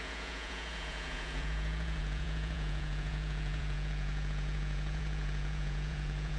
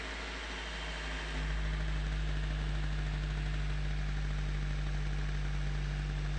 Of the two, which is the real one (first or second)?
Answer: second